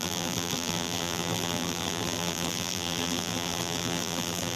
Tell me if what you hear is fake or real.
fake